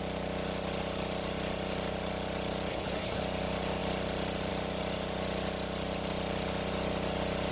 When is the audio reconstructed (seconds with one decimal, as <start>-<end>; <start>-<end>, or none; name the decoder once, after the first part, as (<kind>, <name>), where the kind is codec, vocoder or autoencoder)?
2.7-3.2 (codec, HILCodec)